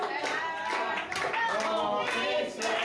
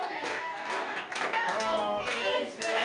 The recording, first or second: first